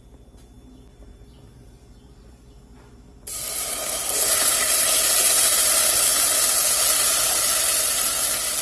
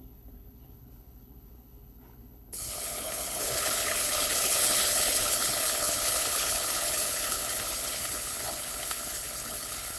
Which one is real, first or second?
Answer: first